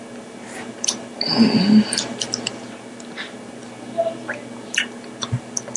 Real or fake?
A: real